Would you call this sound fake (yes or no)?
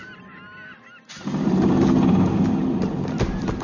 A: no